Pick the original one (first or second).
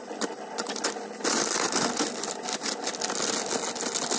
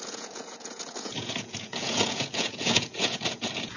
first